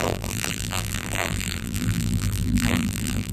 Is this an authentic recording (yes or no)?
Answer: no